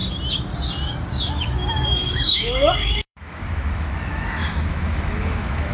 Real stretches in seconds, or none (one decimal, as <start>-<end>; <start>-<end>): 0.0-1.3